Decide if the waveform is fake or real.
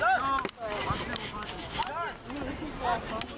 real